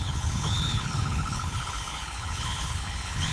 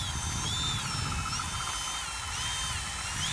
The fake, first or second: first